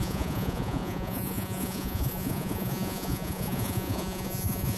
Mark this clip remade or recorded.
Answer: remade